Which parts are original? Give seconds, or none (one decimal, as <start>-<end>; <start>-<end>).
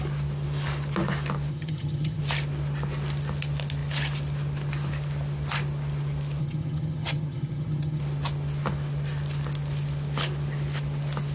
0.0-1.5; 2.2-6.4; 8.0-11.3